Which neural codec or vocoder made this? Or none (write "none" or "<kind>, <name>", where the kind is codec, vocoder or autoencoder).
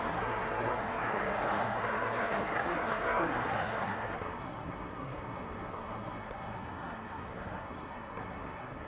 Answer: codec, SNAC